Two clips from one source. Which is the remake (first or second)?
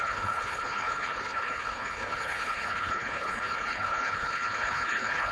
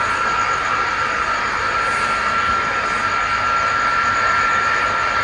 first